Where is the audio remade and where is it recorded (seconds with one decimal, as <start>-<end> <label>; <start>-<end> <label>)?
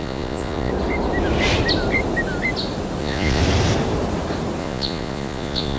0.0-0.7 remade; 0.7-3.0 recorded; 3.0-3.4 remade; 3.4-4.6 recorded; 4.6-5.8 remade